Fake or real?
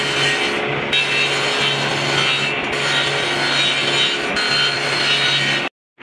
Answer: real